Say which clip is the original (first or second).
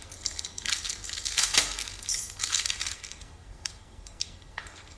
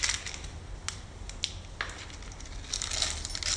second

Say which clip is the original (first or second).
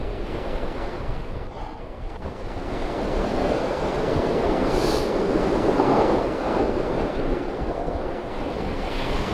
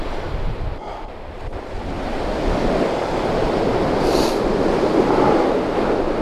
second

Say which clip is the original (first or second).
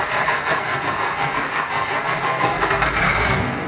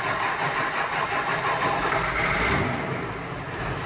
second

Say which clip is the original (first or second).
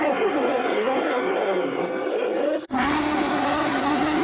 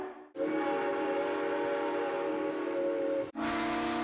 second